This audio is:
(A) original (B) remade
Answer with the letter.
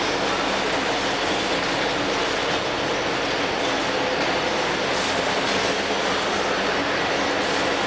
A